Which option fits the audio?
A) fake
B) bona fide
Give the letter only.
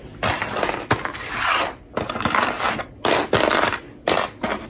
B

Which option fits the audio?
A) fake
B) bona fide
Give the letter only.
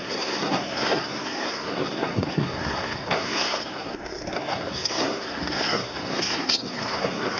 A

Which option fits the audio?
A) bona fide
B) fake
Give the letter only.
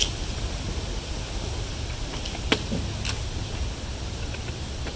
A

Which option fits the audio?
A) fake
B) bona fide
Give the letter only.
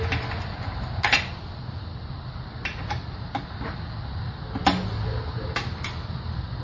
B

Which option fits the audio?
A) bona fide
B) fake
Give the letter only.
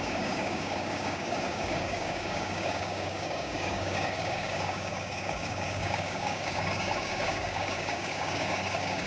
B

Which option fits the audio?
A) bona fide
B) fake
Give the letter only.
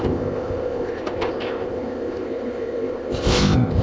B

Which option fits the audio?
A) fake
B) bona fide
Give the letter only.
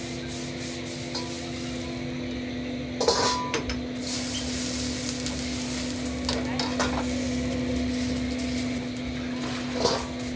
B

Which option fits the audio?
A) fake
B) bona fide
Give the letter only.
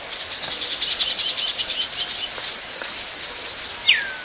B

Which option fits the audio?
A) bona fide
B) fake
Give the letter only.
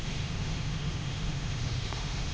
B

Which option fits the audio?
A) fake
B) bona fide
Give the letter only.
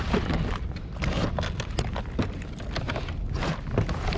B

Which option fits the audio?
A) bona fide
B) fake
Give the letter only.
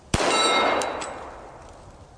A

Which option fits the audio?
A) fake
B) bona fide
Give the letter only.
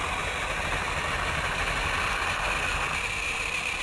B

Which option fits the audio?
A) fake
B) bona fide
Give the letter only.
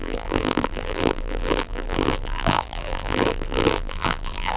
A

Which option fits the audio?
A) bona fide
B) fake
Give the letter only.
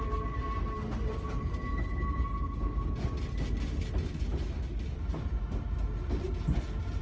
A